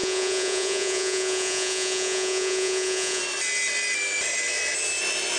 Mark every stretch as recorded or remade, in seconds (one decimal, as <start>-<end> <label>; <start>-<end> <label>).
0.0-3.2 remade; 3.2-5.4 recorded